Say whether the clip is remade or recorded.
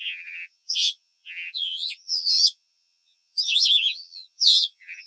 remade